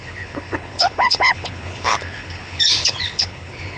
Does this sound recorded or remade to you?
remade